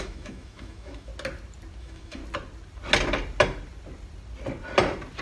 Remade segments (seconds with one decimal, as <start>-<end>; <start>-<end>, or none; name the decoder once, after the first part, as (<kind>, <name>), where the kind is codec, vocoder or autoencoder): 0.0-1.1 (autoencoder, DAC-VAE); 1.8-2.2